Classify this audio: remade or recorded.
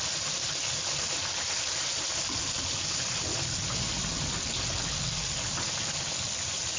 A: recorded